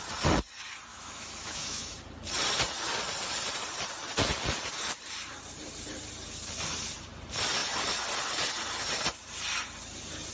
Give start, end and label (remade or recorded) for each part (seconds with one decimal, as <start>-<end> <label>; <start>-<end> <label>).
0.0-0.9 recorded; 0.9-1.9 remade; 1.9-10.3 recorded